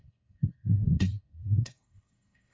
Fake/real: fake